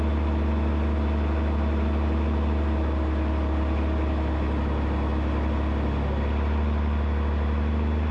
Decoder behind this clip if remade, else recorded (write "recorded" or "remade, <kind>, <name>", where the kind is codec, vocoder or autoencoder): recorded